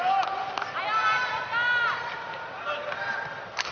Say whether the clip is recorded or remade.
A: recorded